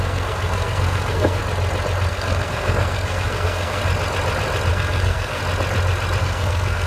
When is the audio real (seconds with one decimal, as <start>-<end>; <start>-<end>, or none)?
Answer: 1.4-2.1; 3.8-4.7; 5.4-6.2